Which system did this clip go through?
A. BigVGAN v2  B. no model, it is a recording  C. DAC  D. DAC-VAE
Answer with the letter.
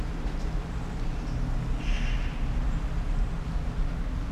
B